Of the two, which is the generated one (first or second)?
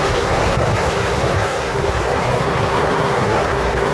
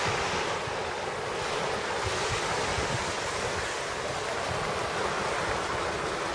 first